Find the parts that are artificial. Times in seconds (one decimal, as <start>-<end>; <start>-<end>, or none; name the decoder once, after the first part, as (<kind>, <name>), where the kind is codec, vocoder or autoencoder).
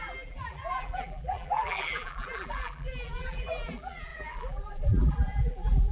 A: 0.0-5.9 (vocoder, BigVGAN v2)